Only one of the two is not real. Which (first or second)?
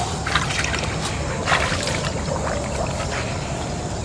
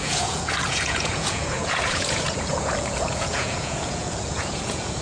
second